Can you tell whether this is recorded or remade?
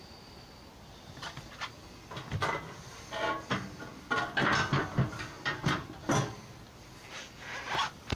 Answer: recorded